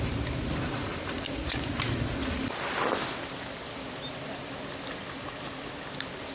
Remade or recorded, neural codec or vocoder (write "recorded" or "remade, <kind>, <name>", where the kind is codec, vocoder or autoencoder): recorded